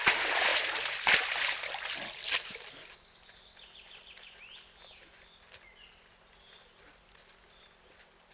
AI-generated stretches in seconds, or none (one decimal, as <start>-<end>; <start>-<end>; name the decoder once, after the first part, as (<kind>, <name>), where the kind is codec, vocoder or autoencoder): none